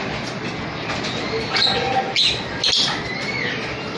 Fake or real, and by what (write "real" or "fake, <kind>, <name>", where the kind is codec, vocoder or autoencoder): real